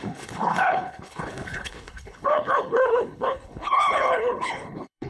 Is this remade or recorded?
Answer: remade